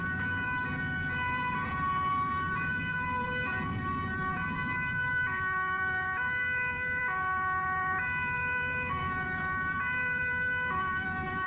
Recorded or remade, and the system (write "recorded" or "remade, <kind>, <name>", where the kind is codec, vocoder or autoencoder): remade, vocoder, BigVGAN v2